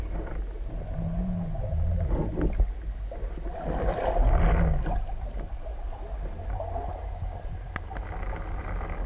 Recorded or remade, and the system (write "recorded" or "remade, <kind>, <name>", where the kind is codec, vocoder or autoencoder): recorded